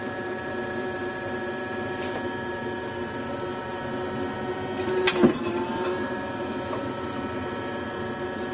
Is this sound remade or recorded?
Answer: recorded